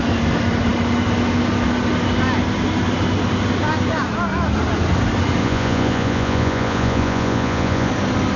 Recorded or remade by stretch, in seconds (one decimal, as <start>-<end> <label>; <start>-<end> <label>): 0.0-5.4 recorded; 5.4-7.9 remade; 7.9-8.4 recorded